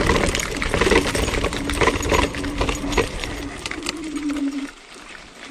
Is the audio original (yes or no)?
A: yes